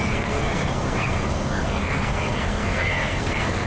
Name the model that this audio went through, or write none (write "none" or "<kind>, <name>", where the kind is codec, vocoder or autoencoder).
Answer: codec, SNAC